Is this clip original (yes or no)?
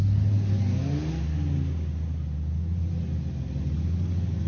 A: yes